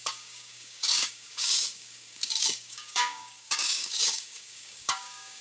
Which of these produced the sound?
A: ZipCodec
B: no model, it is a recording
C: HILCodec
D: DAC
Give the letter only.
D